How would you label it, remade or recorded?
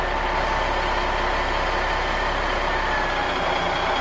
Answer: recorded